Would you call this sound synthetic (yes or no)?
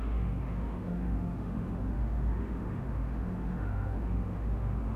yes